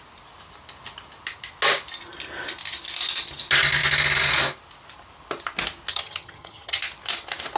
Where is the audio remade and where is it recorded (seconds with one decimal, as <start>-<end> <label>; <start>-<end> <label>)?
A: 0.0-5.9 recorded; 5.9-6.8 remade; 6.8-7.6 recorded